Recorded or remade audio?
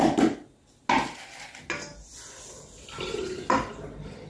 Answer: recorded